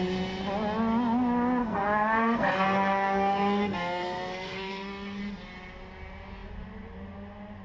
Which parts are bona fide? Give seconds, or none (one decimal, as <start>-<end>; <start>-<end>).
0.0-1.6; 5.2-7.6